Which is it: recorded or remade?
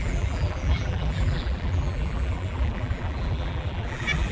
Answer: remade